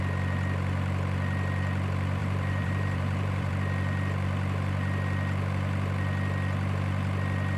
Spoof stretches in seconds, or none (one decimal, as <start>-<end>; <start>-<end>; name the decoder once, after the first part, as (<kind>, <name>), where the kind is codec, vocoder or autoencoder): 2.2-3.5 (vocoder, BigVGAN v2)